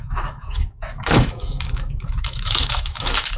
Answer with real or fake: fake